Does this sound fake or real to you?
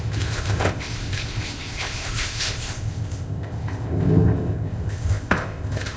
fake